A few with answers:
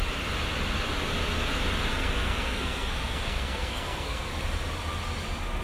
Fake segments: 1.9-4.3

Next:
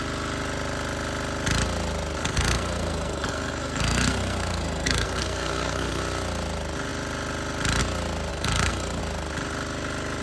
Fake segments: 2.2-6.0; 8.3-9.0

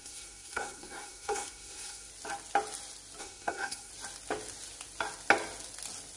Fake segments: 0.0-2.1; 3.2-3.9

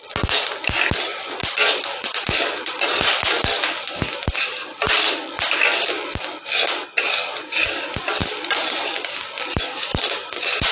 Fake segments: none